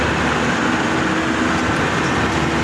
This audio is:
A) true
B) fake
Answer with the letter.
A